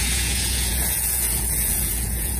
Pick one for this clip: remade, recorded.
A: remade